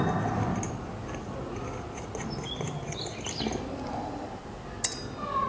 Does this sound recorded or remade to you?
recorded